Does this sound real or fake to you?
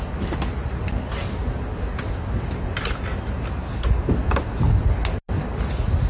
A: real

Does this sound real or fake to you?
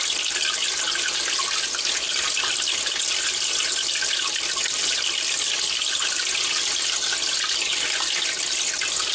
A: real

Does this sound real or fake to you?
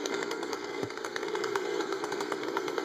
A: fake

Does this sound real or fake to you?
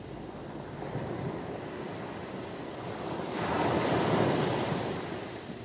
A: real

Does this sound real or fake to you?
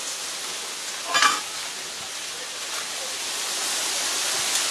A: real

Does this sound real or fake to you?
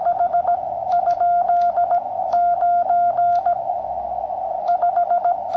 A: real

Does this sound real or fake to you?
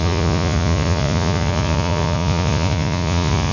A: fake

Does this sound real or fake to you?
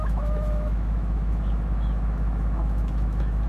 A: fake